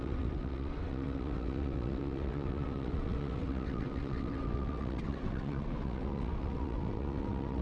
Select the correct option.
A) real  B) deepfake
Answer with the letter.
B